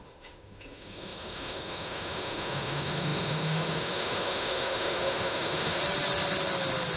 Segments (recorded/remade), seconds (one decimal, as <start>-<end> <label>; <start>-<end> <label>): 0.0-5.8 remade; 5.8-7.0 recorded